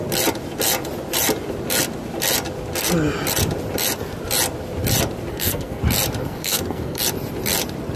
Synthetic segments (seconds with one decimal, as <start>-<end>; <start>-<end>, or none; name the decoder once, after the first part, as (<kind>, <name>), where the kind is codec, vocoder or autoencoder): 5.3-5.8 (codec, SNAC); 6.2-7.0